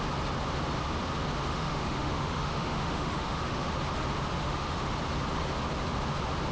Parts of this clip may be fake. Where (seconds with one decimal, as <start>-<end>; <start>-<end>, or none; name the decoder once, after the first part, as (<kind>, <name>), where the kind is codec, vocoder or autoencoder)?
1.5-3.7 (autoencoder, DAC-VAE); 4.4-4.9